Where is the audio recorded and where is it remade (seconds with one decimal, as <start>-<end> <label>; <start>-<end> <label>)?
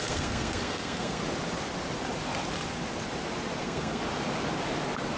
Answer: 0.0-1.2 remade; 1.2-3.6 recorded; 3.6-4.0 remade; 4.0-5.2 recorded